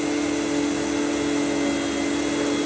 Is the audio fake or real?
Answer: real